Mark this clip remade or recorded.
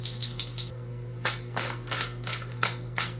remade